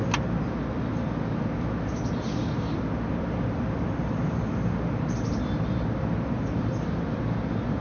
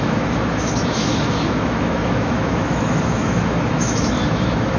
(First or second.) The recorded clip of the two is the first